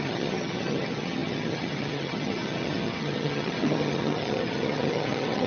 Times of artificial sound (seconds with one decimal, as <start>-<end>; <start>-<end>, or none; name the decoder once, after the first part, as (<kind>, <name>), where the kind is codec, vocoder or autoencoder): 0.0-5.5 (vocoder, HiFi-GAN)